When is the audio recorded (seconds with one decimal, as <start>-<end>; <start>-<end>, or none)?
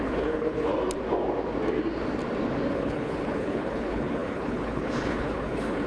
0.7-2.7